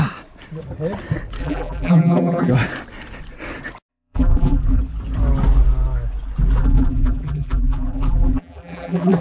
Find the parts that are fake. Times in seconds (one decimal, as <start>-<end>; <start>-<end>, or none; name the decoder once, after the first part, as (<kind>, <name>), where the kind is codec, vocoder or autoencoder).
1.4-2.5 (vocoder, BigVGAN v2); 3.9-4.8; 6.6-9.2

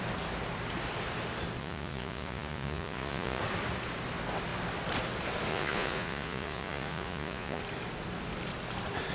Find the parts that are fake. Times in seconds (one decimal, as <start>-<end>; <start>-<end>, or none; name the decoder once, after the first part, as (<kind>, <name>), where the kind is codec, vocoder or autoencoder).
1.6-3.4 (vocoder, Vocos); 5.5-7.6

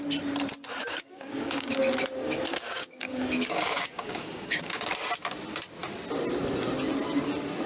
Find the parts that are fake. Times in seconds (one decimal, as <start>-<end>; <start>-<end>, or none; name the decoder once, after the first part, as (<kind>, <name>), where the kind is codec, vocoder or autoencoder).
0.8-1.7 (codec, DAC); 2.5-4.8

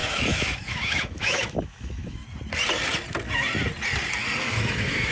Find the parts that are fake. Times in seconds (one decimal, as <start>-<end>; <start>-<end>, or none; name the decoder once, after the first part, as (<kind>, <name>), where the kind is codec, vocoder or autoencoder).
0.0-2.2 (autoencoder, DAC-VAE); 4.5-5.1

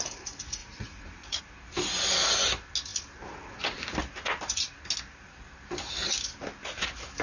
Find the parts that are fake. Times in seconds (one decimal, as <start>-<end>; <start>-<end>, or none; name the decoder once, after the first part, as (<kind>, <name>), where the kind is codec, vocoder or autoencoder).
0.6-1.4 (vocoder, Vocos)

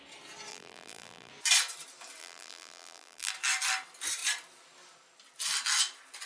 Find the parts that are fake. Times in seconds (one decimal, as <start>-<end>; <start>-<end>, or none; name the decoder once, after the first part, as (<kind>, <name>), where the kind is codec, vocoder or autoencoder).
0.5-1.3 (vocoder, BigVGAN v2); 2.2-3.3

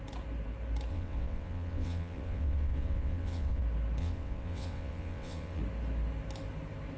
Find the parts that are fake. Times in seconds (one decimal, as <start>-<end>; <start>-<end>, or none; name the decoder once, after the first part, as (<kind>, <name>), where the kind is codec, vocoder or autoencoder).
0.9-3.6 (vocoder, WaveNeXt); 4.0-5.6

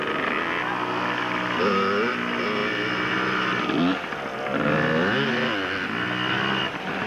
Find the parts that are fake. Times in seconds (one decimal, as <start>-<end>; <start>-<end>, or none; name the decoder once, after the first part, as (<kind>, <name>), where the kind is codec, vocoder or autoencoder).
none